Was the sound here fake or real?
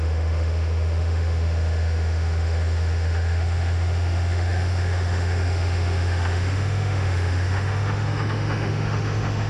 fake